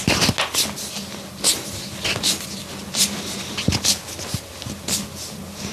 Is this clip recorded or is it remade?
recorded